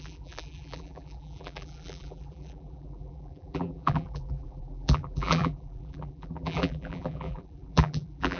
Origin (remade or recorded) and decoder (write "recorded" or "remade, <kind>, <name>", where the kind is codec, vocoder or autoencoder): remade, vocoder, BigVGAN v2